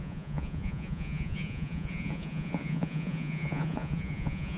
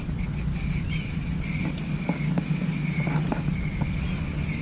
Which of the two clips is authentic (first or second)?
second